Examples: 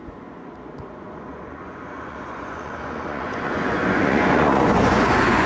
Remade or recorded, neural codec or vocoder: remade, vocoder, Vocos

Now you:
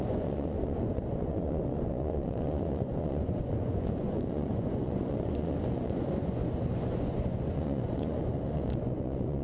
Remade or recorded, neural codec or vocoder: remade, vocoder, Vocos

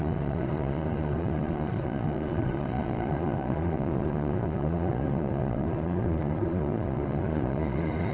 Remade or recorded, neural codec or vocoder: remade, vocoder, Vocos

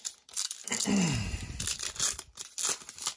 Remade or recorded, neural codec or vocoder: recorded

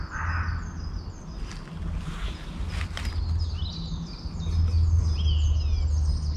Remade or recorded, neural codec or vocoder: recorded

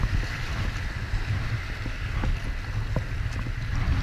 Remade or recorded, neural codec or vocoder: recorded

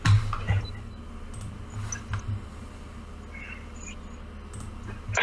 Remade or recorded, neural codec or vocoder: recorded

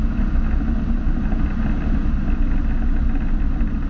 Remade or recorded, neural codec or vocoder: recorded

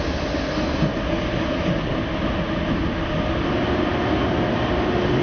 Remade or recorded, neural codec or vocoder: recorded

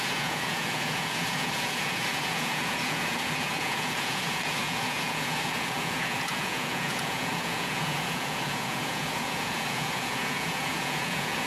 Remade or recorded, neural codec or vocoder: remade, vocoder, Vocos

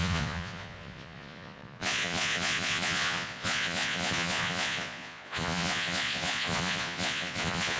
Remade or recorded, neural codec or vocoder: remade, vocoder, Vocos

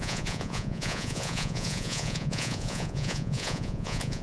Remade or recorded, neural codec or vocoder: remade, vocoder, Vocos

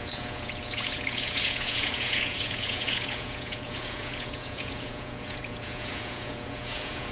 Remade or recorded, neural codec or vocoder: remade, vocoder, Vocos